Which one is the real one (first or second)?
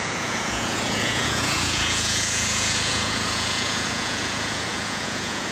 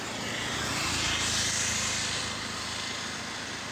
second